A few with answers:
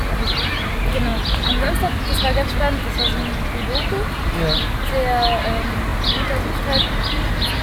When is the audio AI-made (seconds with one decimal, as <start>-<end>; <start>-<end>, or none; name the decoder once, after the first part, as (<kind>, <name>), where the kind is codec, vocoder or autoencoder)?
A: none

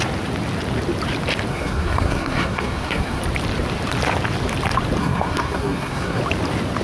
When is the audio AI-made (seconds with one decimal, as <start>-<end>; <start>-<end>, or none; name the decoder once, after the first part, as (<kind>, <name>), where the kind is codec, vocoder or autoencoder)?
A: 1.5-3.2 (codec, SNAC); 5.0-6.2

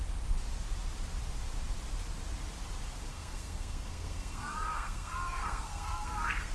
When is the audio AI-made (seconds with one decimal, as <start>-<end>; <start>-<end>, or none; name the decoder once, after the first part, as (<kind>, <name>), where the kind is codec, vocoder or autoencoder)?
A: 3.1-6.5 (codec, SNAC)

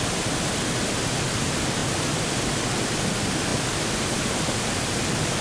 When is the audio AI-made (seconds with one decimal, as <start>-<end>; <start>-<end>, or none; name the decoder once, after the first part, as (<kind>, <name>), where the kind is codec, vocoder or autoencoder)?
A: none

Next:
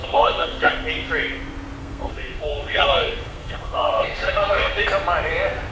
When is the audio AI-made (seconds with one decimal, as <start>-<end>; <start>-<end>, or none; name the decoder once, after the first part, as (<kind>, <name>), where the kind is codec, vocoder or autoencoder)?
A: 0.0-0.7 (codec, SNAC); 1.8-4.8

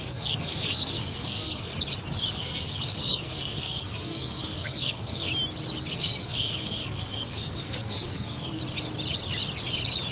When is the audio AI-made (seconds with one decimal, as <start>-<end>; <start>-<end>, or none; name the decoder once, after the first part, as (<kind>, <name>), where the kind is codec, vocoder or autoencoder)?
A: 0.0-1.7 (codec, SNAC); 2.3-5.3; 5.9-8.6

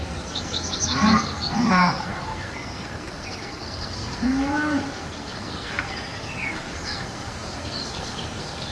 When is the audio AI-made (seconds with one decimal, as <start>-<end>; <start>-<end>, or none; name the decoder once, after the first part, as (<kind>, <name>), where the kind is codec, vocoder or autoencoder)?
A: 0.0-8.7 (codec, SNAC)